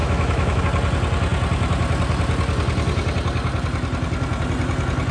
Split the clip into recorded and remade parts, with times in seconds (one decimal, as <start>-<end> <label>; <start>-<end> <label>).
0.0-0.6 remade; 0.6-5.1 recorded